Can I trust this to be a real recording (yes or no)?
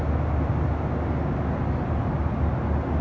yes